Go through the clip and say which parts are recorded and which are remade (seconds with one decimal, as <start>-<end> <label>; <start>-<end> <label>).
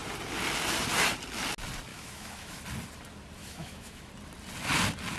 0.0-1.9 recorded; 1.9-2.6 remade; 2.6-3.4 recorded; 3.4-4.1 remade; 4.1-5.2 recorded